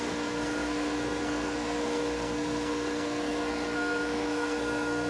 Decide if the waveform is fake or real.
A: fake